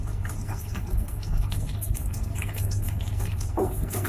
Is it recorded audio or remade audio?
remade